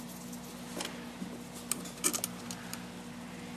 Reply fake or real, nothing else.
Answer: real